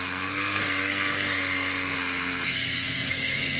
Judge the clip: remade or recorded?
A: remade